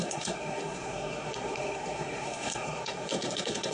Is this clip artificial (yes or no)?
yes